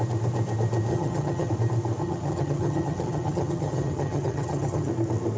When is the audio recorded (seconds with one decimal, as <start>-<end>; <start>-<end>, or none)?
0.0-0.9; 1.5-2.0; 4.9-5.4